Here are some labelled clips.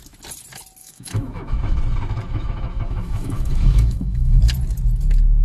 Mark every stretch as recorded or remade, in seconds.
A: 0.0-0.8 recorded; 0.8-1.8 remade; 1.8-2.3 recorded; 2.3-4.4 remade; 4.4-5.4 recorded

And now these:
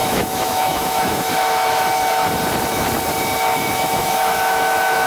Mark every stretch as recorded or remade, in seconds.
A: 0.0-2.2 remade; 2.2-3.5 recorded; 3.5-5.1 remade

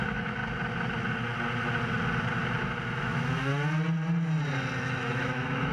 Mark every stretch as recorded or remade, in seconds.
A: 0.0-0.4 remade; 0.4-3.0 recorded; 3.0-3.5 remade; 3.5-4.8 recorded; 4.8-5.7 remade

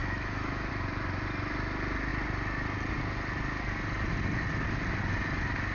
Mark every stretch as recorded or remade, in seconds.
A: 0.0-0.7 remade; 0.7-5.7 recorded

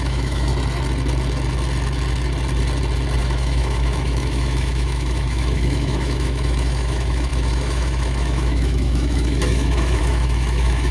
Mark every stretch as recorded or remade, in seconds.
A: 0.0-0.5 remade; 0.5-3.2 recorded; 3.2-10.9 remade

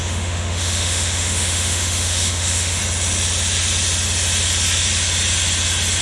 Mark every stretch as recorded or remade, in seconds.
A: 0.0-2.8 remade; 2.8-6.0 recorded